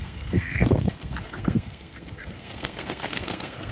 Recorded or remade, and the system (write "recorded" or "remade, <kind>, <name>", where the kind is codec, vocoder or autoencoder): remade, codec, SNAC